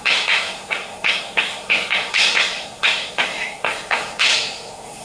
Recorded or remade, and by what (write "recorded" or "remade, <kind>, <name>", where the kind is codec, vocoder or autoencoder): remade, codec, SNAC